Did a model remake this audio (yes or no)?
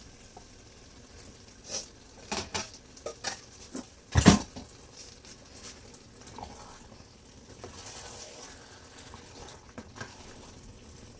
no